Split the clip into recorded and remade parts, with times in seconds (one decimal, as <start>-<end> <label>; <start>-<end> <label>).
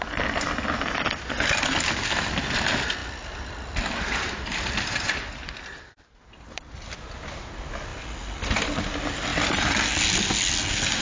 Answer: 0.0-3.0 recorded; 3.0-7.3 remade; 7.3-9.3 recorded; 9.3-9.9 remade; 9.9-11.0 recorded